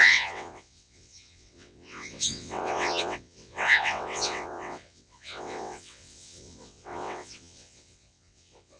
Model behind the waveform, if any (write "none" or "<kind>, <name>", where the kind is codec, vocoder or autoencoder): vocoder, WaveNeXt